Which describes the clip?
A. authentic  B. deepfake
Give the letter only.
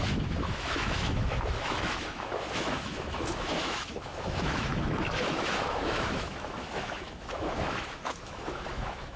B